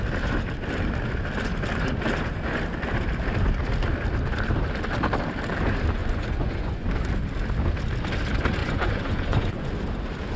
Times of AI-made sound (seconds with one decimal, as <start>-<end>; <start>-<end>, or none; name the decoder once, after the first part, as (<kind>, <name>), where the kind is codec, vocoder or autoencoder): 6.0-6.9 (vocoder, Vocos); 8.6-9.7